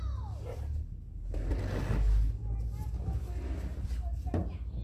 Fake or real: real